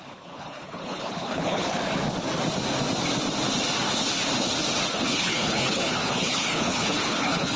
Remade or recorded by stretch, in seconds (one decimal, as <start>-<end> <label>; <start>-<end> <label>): 0.0-1.8 remade; 1.8-5.0 recorded; 5.0-7.6 remade